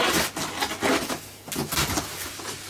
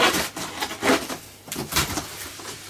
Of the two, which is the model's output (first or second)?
second